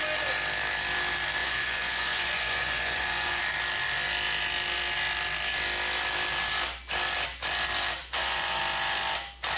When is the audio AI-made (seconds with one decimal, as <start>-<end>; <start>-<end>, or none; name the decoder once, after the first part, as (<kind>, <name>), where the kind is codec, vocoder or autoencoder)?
1.4-3.4 (vocoder, Vocos); 8.0-8.6